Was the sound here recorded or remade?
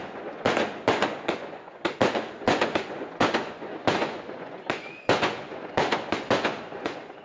remade